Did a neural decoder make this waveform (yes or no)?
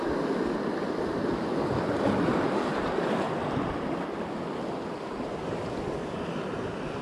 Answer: no